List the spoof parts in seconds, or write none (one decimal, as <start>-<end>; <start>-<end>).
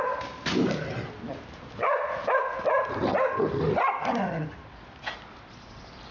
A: none